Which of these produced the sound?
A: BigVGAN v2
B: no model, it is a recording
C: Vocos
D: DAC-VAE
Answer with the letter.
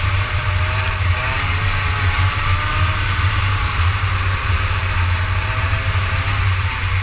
A